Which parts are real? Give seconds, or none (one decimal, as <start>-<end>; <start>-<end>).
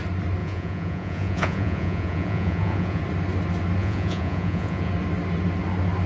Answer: 0.0-0.4; 3.0-3.8; 4.9-6.1